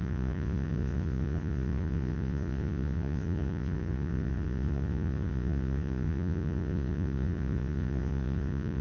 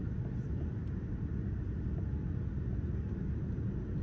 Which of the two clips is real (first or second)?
second